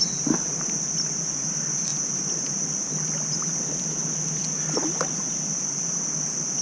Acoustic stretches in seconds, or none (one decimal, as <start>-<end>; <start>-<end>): 0.0-6.6